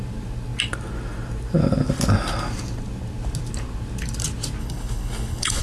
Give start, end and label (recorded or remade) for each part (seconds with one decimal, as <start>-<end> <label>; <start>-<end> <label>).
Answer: 0.0-4.6 recorded; 4.6-5.6 remade